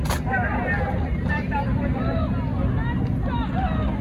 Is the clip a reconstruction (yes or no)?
no